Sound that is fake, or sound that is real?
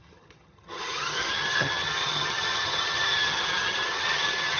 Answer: fake